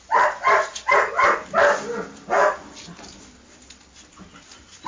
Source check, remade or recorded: recorded